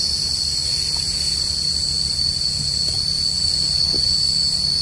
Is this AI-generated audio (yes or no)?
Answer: no